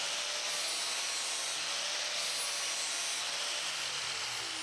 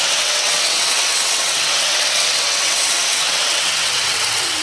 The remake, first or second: second